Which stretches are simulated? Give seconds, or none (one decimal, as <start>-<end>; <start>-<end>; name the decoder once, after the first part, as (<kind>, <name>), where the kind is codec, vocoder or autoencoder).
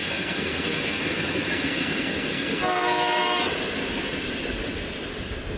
0.0-3.4 (codec, SNAC)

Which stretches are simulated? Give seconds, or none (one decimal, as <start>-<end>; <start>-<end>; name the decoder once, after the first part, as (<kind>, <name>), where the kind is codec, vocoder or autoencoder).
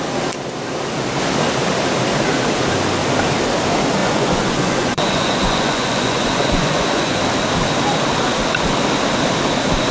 4.0-7.2 (vocoder, Vocos)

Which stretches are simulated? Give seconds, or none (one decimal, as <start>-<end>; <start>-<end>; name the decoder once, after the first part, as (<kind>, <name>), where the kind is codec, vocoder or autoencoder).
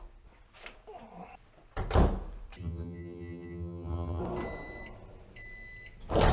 2.6-4.2 (vocoder, HiFi-GAN)